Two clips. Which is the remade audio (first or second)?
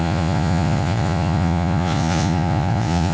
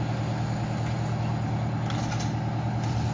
first